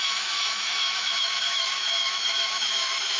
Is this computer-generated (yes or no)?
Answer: yes